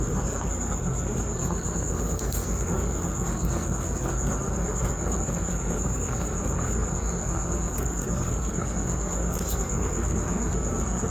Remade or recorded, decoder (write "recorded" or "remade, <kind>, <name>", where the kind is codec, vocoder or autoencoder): remade, codec, SNAC